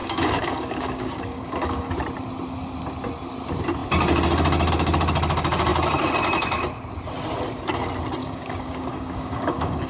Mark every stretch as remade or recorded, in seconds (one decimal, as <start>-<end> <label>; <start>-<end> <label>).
0.0-2.0 remade; 2.0-8.2 recorded; 8.2-9.9 remade